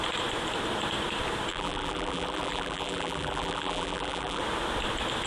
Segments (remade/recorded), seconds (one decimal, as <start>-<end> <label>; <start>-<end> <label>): 0.0-1.5 recorded; 1.5-4.4 remade; 4.4-5.3 recorded